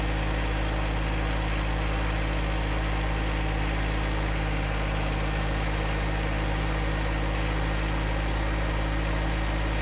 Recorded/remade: recorded